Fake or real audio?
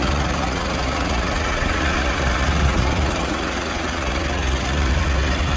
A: fake